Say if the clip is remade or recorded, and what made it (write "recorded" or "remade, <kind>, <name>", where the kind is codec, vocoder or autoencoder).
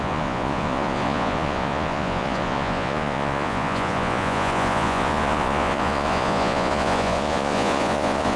remade, vocoder, Vocos